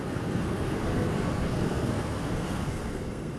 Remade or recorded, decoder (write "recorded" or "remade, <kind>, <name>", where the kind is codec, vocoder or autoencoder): remade, codec, SNAC